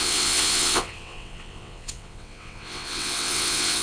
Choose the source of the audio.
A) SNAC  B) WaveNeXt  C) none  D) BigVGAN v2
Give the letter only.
B